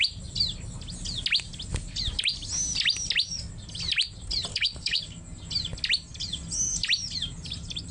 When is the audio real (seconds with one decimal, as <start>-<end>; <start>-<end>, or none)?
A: 0.0-4.5; 5.0-7.9

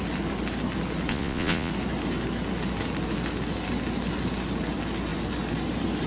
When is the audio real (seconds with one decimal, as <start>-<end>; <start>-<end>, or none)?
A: 0.0-1.1; 1.7-6.1

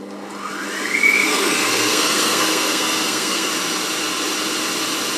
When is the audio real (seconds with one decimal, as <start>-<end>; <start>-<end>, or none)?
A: 0.0-1.2; 3.5-5.2

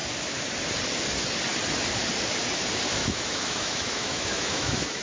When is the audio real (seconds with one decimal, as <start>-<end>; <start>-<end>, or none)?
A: 0.0-3.0

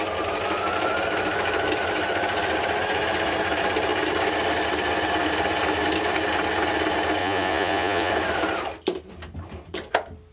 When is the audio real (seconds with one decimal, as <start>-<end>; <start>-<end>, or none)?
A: 0.0-7.2; 8.1-10.3